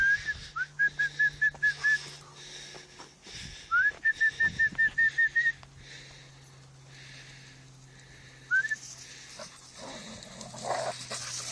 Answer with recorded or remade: recorded